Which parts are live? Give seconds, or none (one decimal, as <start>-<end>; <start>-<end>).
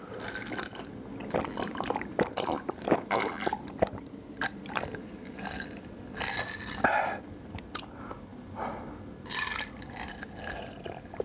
0.0-1.2; 6.0-8.3; 8.9-11.2